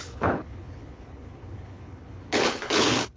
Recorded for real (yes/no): no